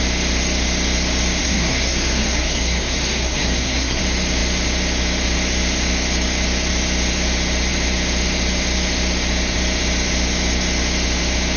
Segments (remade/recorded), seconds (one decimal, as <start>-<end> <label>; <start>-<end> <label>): 0.0-1.4 recorded; 1.4-4.0 remade; 4.0-11.6 recorded